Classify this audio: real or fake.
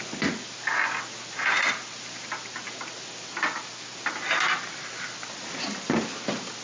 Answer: real